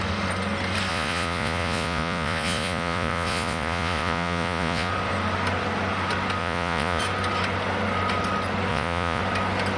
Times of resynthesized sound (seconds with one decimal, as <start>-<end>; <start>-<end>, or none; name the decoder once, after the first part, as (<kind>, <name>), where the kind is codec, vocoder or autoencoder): 0.9-4.9 (vocoder, Vocos); 6.4-7.0; 8.7-9.2